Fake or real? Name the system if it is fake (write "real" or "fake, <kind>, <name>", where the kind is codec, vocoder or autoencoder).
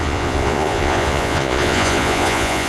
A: fake, vocoder, Vocos